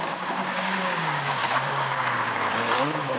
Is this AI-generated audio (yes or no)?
yes